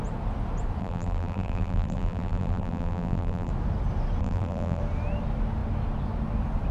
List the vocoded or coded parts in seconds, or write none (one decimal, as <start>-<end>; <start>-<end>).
0.8-3.5; 4.2-4.8